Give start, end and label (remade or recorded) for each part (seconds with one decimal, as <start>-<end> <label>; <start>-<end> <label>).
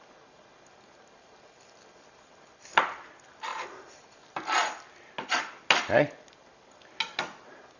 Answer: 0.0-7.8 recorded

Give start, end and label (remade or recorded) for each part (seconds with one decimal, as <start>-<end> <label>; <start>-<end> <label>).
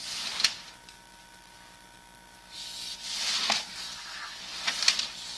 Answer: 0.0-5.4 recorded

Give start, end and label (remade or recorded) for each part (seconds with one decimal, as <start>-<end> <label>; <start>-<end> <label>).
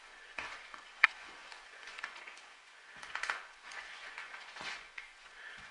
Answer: 0.0-5.7 remade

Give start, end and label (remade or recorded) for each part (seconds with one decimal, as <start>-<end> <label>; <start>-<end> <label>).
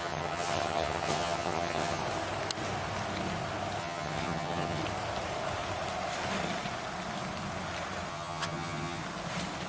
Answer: 0.0-2.0 remade; 2.0-3.8 recorded; 3.8-4.8 remade; 4.8-8.1 recorded; 8.1-9.0 remade; 9.0-9.7 recorded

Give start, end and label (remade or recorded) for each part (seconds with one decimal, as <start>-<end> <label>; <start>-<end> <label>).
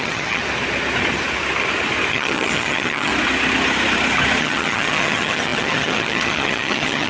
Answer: 0.0-0.4 remade; 0.4-2.1 recorded; 2.1-3.1 remade; 3.1-4.4 recorded; 4.4-7.1 remade